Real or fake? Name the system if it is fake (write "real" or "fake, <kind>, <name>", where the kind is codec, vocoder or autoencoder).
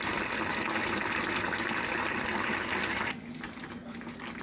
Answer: real